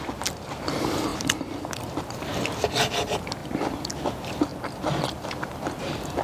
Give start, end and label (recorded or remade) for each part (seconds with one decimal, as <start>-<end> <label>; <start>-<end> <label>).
0.0-4.5 remade; 4.5-5.1 recorded; 5.1-6.2 remade